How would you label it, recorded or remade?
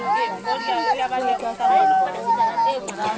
recorded